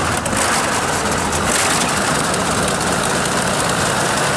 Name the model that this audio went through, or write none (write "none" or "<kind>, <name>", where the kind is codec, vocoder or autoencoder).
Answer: none